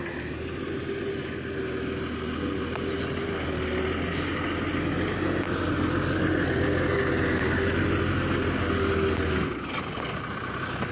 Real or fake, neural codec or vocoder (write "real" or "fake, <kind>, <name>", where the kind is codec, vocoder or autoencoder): real